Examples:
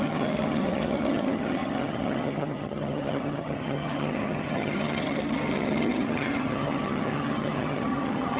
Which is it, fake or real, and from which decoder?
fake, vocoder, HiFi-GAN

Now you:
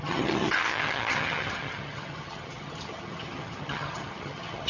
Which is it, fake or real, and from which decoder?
fake, vocoder, HiFi-GAN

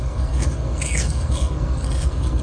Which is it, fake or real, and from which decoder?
fake, codec, SNAC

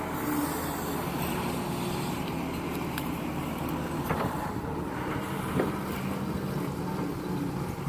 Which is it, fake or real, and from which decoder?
real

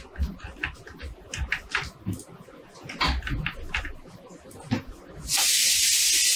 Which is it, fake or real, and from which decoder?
real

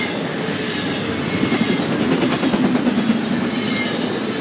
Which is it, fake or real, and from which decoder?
real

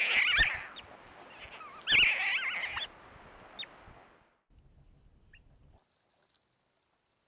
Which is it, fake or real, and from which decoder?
real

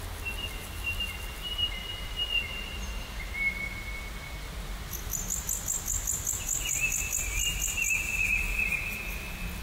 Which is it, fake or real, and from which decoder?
real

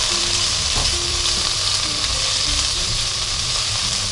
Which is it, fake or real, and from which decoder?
fake, vocoder, BigVGAN v2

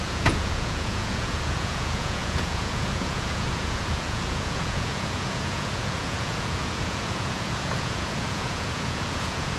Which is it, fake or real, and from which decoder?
fake, vocoder, Vocos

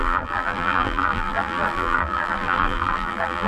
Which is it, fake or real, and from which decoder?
fake, vocoder, BigVGAN v2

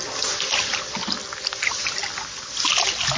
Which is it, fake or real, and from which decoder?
real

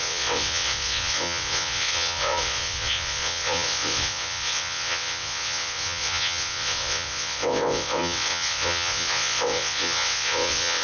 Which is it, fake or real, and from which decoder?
fake, vocoder, WaveNeXt